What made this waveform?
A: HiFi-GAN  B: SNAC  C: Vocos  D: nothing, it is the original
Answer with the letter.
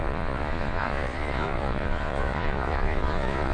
C